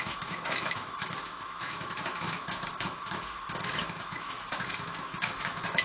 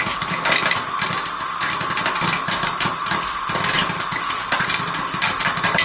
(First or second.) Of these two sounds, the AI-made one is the first